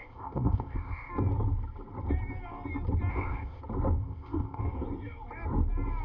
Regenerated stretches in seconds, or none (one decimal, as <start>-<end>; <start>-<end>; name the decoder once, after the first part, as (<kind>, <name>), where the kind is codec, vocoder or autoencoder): 0.0-1.1 (codec, ZipCodec); 3.1-3.6; 4.0-4.6